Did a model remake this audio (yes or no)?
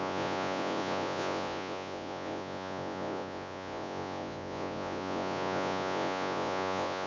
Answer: yes